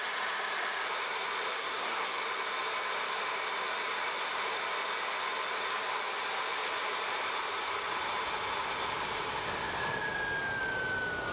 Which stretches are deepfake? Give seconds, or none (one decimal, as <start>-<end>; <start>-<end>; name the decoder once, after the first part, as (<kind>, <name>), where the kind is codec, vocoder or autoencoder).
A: 1.5-2.2 (codec, SNAC)